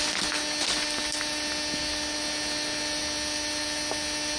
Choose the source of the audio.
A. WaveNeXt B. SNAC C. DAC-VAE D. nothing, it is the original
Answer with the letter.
D